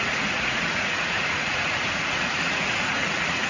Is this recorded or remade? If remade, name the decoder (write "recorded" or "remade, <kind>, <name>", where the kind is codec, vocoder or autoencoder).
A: remade, vocoder, Vocos